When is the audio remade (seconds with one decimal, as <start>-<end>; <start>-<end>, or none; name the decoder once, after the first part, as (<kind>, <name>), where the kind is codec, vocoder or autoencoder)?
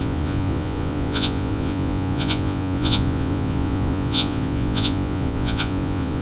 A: 0.0-6.2 (vocoder, Vocos)